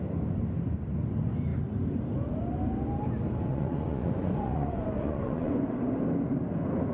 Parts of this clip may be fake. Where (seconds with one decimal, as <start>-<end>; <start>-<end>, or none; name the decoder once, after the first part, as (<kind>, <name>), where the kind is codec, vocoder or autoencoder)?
3.5-5.6 (vocoder, Vocos)